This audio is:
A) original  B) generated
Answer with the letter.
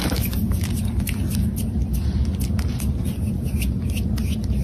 A